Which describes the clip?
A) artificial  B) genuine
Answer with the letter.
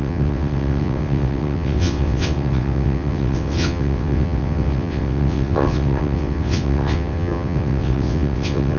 A